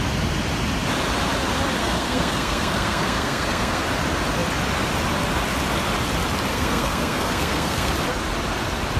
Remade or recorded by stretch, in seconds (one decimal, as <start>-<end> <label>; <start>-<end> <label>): 0.0-1.8 recorded; 1.8-3.8 remade; 3.8-6.5 recorded; 6.5-7.9 remade; 7.9-9.0 recorded